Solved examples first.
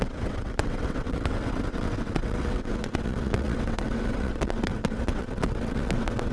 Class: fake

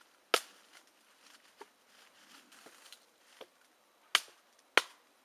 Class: real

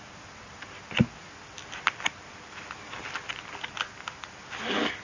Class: real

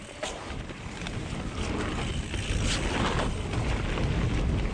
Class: real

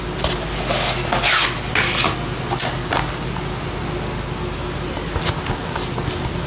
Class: real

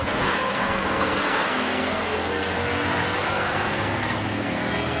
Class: fake